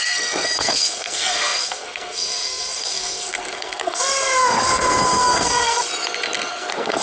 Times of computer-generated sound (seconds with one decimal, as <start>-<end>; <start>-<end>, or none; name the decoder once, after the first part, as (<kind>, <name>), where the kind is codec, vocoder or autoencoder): 0.0-5.8 (codec, SNAC); 6.5-7.0